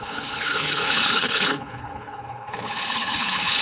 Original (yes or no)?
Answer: no